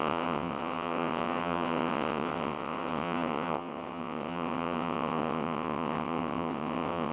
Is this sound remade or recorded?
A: remade